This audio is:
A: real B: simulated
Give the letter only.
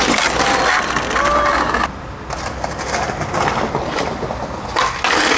A